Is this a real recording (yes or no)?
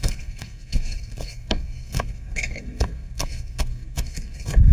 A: no